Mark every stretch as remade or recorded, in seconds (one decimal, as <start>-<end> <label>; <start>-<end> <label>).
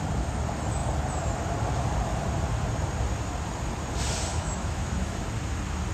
0.0-4.3 recorded; 4.3-5.2 remade; 5.2-5.9 recorded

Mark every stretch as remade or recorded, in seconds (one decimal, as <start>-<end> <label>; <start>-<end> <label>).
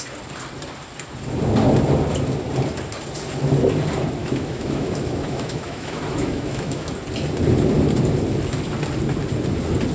0.0-4.2 recorded; 4.2-6.9 remade; 6.9-9.9 recorded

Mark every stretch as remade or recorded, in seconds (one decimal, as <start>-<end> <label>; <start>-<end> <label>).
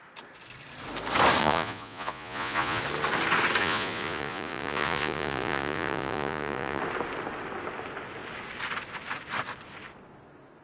0.0-1.4 recorded; 1.4-2.8 remade; 2.8-3.6 recorded; 3.6-6.8 remade; 6.8-10.6 recorded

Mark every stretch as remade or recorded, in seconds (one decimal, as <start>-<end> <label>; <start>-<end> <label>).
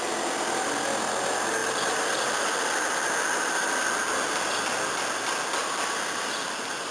0.0-6.9 recorded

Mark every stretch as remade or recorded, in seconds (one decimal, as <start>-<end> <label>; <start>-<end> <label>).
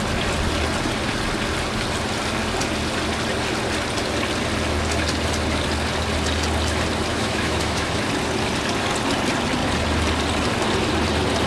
0.0-7.1 recorded; 7.1-8.0 remade; 8.0-11.5 recorded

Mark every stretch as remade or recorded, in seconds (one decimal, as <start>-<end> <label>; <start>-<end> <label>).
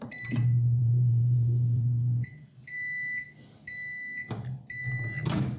0.0-0.8 recorded; 0.8-2.5 remade; 2.5-5.6 recorded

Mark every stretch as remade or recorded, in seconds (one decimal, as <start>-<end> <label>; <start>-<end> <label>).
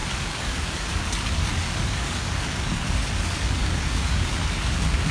0.0-5.1 remade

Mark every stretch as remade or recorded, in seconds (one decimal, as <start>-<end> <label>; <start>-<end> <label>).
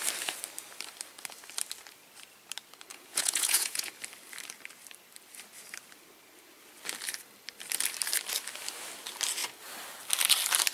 0.0-2.9 recorded; 2.9-3.9 remade; 3.9-10.7 recorded